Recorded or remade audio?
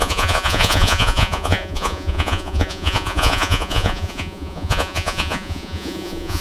remade